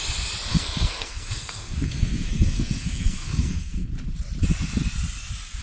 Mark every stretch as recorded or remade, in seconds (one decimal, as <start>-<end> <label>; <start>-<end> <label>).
0.0-0.5 recorded; 0.5-3.9 remade; 3.9-5.6 recorded